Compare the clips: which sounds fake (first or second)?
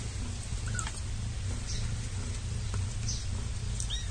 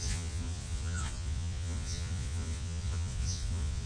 second